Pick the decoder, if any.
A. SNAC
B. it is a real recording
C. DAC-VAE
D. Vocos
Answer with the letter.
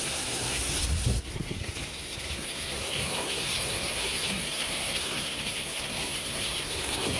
A